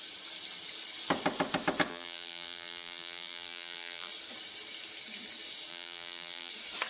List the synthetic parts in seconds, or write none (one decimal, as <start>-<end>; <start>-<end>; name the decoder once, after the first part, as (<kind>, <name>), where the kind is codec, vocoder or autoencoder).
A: 1.9-4.1 (vocoder, BigVGAN v2); 5.7-6.5